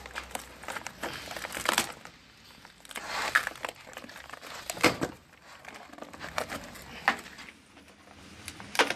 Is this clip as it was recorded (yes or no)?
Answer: yes